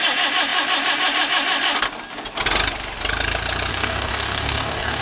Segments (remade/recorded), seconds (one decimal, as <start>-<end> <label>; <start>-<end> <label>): 0.0-3.7 recorded; 3.7-5.0 remade